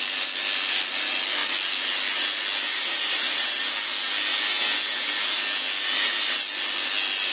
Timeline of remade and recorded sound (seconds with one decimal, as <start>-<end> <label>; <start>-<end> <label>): 0.0-2.7 recorded; 2.7-3.6 remade; 3.6-7.3 recorded